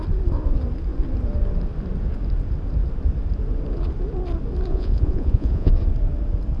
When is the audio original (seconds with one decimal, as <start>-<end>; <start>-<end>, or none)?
0.0-4.7; 5.7-6.6